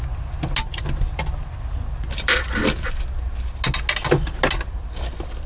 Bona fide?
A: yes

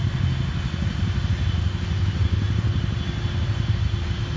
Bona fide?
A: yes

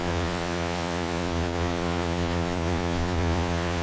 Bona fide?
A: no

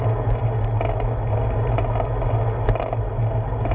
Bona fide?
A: yes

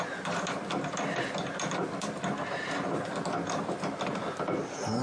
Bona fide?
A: yes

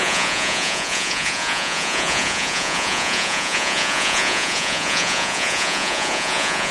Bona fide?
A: no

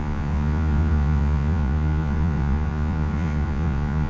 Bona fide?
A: no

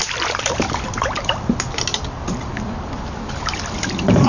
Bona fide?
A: yes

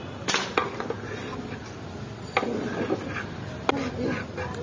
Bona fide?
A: yes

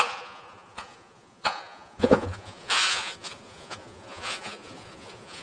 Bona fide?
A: no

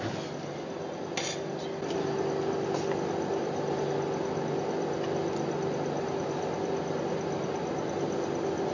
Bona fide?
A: yes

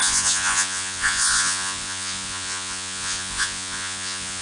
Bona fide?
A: no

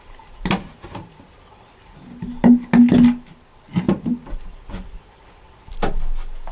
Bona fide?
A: yes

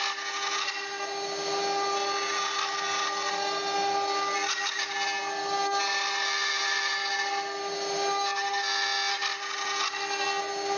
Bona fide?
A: yes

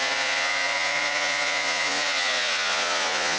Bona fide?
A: no